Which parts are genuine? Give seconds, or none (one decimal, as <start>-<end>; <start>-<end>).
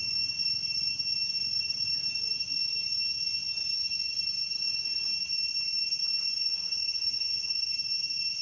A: 0.0-6.4; 7.7-8.4